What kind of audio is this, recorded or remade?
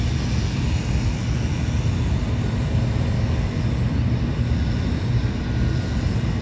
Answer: recorded